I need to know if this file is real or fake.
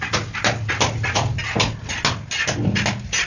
real